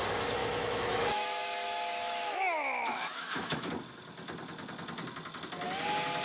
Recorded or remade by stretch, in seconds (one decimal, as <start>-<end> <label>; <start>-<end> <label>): 0.0-0.4 recorded; 0.4-3.7 remade; 3.7-6.2 recorded

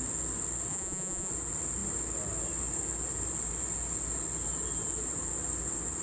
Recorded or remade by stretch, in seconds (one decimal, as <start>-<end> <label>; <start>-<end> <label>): 0.0-0.7 recorded; 0.7-1.3 remade; 1.3-6.0 recorded